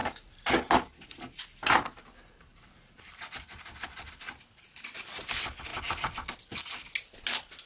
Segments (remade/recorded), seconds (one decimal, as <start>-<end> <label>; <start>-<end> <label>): 0.0-7.7 recorded